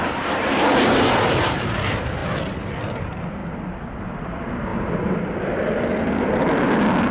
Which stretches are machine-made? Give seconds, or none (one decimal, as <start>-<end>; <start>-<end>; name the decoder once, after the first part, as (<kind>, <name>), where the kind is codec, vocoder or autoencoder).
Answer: 0.0-2.2 (vocoder, BigVGAN v2); 2.8-3.4; 4.2-4.7